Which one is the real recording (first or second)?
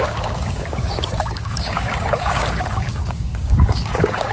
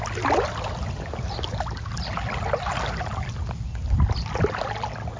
second